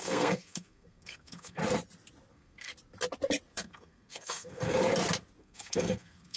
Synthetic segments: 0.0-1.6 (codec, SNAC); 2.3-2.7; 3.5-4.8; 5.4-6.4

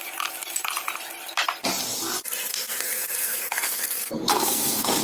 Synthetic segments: 2.5-5.0 (codec, SNAC)

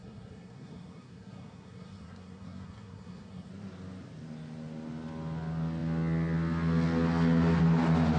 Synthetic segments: 0.0-3.5 (codec, SNAC)

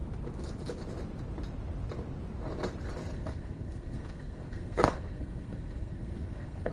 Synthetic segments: 3.0-6.7 (codec, SNAC)

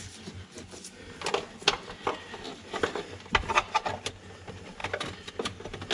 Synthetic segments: none

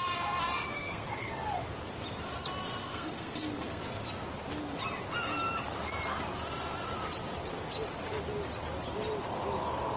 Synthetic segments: 0.7-1.3 (codec, SNAC); 2.8-3.8